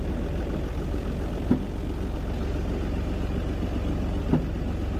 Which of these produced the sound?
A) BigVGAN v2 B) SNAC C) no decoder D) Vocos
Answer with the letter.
C